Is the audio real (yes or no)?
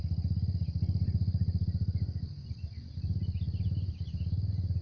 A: yes